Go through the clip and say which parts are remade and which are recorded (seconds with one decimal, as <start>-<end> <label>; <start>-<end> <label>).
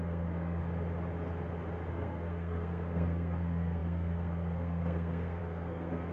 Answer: 0.0-0.6 remade; 0.6-1.9 recorded; 1.9-6.1 remade